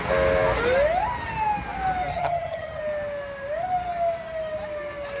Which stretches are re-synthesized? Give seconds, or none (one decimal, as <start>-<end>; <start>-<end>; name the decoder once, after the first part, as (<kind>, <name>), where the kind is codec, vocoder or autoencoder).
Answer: 2.1-2.8 (vocoder, HiFi-GAN)